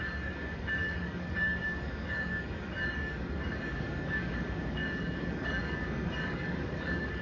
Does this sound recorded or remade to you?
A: remade